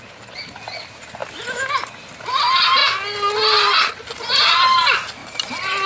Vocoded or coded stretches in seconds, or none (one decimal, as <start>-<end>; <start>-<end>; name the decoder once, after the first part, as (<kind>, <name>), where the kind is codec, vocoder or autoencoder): 5.2-5.9 (vocoder, BigVGAN v2)